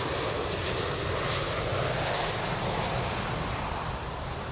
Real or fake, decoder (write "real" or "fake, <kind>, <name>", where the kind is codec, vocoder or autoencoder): real